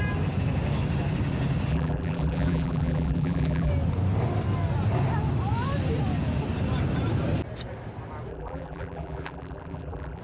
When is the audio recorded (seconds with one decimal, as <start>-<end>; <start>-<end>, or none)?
0.0-1.7; 3.7-8.3